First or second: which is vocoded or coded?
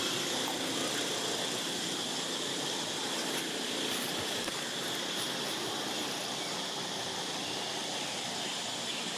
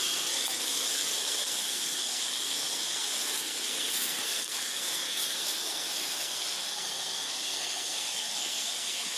second